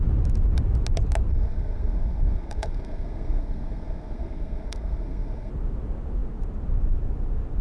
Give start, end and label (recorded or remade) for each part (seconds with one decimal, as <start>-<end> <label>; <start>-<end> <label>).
0.0-1.3 recorded; 1.3-5.5 remade; 5.5-7.6 recorded